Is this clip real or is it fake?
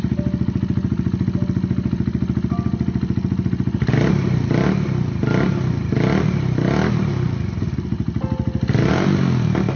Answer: real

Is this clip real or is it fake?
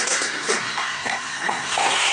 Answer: fake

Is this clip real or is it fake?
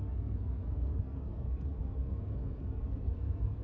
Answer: fake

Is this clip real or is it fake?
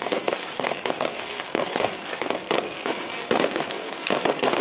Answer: fake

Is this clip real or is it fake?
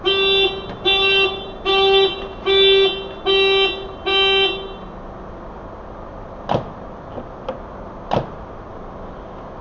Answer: real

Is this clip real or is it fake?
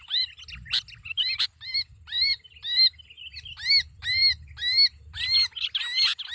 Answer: real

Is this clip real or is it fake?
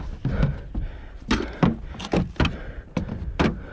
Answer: real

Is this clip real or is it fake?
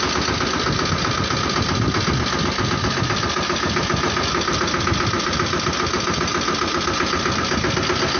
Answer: real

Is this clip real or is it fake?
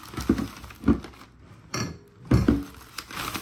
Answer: real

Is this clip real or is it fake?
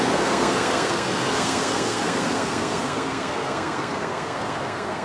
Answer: fake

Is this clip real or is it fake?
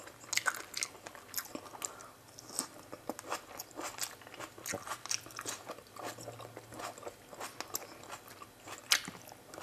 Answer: real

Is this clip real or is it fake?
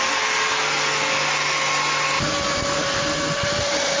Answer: real